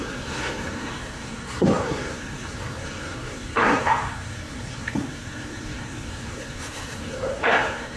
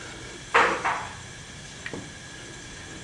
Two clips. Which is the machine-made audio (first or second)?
first